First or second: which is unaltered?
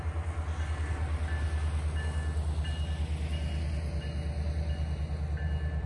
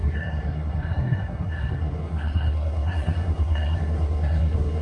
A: first